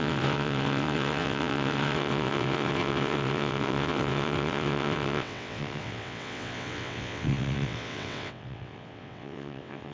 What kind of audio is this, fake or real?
fake